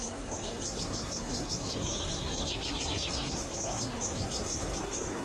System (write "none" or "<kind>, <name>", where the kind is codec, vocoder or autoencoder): codec, SNAC